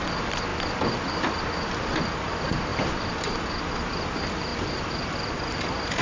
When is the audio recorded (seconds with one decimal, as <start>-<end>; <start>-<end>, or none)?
0.0-6.0